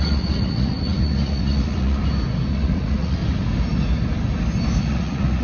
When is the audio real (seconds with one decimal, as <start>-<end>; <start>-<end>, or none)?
2.0-2.5; 3.2-4.8